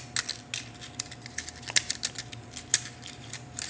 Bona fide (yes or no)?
yes